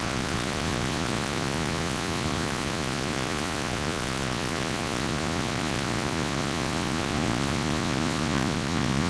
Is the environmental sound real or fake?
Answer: fake